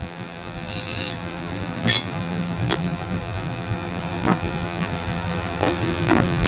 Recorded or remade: remade